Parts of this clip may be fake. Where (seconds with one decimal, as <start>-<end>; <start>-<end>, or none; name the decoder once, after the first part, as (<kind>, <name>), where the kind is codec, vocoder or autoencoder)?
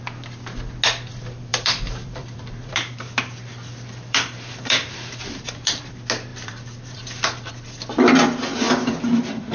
1.5-5.8 (vocoder, BigVGAN v2); 6.3-7.5